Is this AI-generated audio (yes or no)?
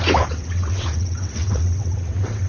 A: yes